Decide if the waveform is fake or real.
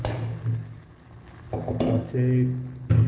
real